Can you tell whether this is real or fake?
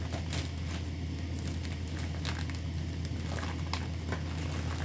real